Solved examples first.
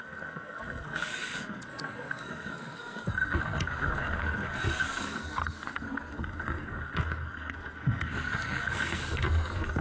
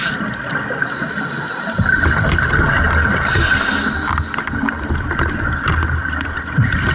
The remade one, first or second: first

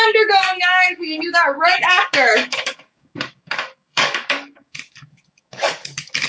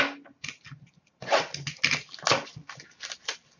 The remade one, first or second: first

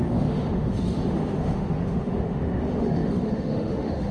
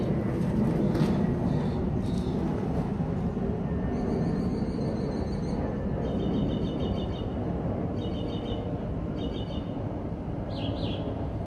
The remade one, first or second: first